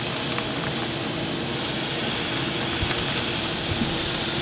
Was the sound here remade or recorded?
recorded